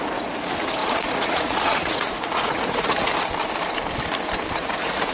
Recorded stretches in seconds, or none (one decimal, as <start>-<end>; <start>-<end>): 3.1-4.5